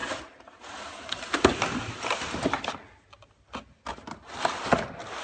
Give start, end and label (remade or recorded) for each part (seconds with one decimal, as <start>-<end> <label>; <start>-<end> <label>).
0.0-5.2 recorded